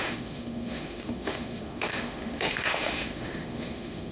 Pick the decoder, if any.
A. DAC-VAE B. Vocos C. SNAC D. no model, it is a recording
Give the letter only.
A